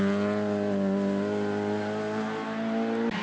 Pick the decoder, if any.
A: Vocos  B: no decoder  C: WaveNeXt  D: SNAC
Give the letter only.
B